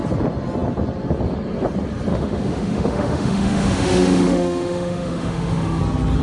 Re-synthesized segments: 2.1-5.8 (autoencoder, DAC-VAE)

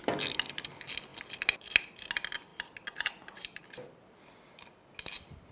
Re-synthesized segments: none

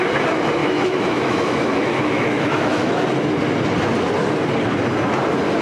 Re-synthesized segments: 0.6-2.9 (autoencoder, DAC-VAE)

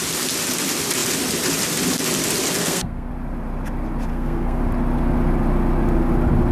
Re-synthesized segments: 2.6-3.1 (codec, SNAC); 4.1-4.6

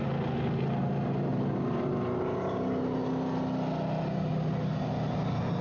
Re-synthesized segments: none

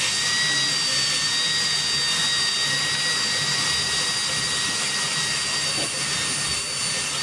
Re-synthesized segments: none

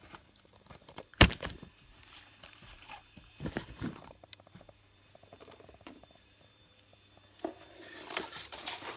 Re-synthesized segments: 0.0-6.9 (vocoder, BigVGAN v2); 8.2-9.0

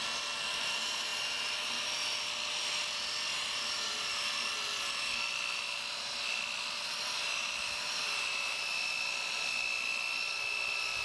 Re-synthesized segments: 0.0-1.1 (vocoder, BigVGAN v2); 2.7-9.9; 10.4-11.0